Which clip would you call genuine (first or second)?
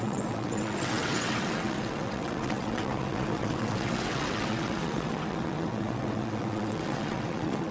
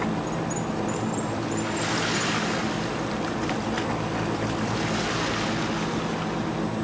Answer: second